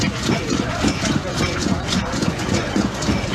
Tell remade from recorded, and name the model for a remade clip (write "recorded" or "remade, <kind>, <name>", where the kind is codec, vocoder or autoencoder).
remade, vocoder, Vocos